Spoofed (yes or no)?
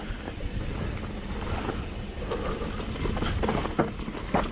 no